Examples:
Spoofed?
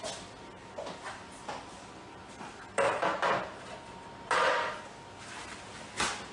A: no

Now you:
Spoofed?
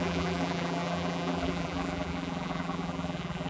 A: yes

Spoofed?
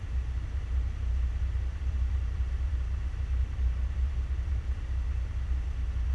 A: no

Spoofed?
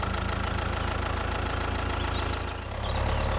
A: no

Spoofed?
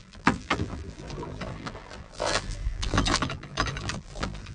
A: yes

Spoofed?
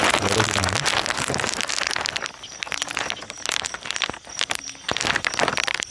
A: no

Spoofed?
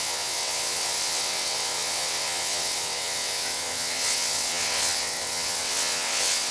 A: yes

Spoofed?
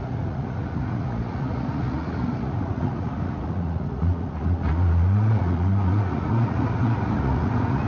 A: yes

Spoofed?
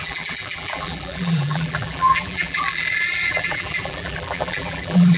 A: yes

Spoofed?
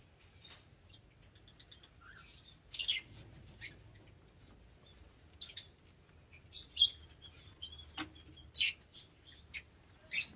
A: no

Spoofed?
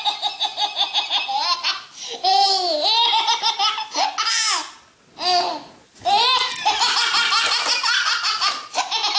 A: no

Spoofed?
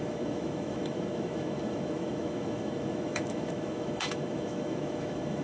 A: yes